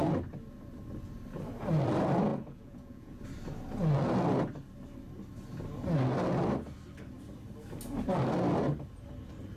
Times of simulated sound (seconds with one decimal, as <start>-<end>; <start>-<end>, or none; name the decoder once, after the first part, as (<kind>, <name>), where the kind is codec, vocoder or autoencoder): 2.3-3.2 (vocoder, Vocos)